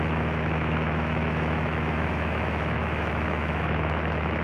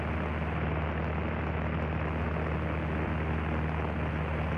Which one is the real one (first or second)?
second